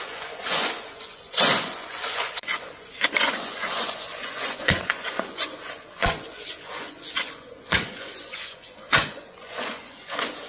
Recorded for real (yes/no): no